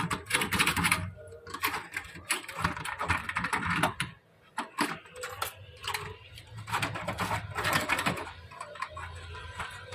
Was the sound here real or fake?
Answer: real